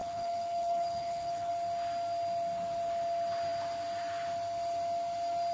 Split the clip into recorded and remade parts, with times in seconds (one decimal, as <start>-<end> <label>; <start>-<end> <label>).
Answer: 0.0-1.5 remade; 1.5-5.5 recorded